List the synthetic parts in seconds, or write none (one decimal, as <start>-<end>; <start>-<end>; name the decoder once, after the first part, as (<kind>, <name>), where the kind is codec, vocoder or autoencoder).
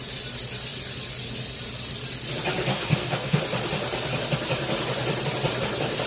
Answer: 2.7-3.4 (codec, SNAC)